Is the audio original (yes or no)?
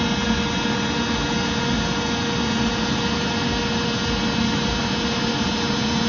yes